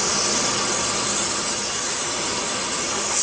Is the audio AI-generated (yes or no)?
no